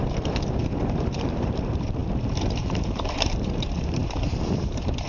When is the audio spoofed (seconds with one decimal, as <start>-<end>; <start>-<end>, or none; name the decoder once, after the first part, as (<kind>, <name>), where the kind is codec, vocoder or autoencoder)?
0.6-5.1 (vocoder, BigVGAN v2)